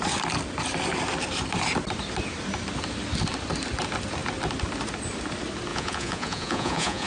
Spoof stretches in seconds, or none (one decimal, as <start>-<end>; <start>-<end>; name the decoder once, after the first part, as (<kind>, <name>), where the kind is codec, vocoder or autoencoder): 5.7-7.1 (vocoder, Vocos)